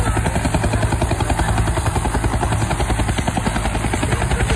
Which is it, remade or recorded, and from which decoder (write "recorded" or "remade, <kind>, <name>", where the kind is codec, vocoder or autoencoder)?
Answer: recorded